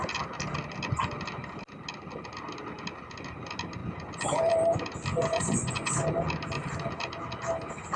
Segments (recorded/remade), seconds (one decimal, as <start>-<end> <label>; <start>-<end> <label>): 0.0-5.1 recorded; 5.1-6.0 remade; 6.0-8.0 recorded